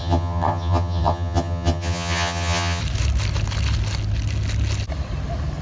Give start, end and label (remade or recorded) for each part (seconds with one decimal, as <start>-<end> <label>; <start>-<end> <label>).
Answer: 0.0-2.8 remade; 2.8-5.6 recorded